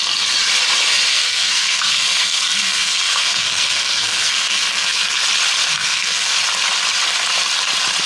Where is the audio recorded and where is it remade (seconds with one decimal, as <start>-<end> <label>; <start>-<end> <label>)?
0.0-1.1 recorded; 1.1-5.2 remade; 5.2-5.7 recorded; 5.7-6.3 remade; 6.3-8.1 recorded